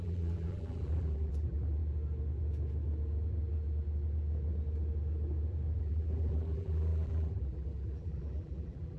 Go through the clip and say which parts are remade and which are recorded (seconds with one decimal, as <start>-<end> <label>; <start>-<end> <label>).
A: 0.0-1.8 remade; 1.8-5.8 recorded; 5.8-9.0 remade